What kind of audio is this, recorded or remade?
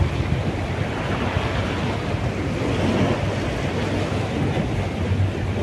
recorded